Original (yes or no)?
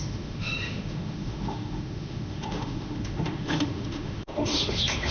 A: no